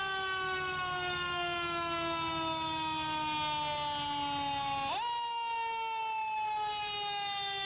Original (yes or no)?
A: yes